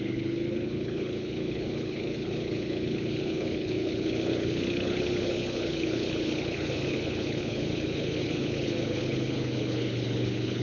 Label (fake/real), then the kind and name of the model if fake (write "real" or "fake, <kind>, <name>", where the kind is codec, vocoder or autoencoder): fake, codec, HILCodec